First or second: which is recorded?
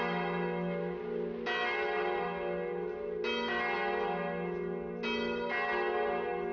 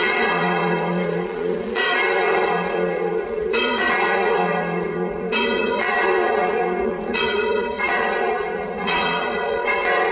first